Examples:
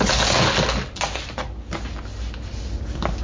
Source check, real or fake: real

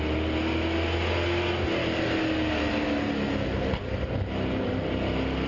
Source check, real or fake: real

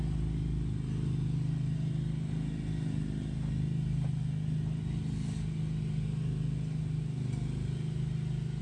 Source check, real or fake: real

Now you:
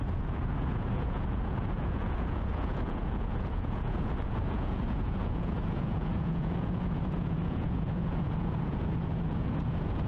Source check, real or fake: fake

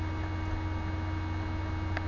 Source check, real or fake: real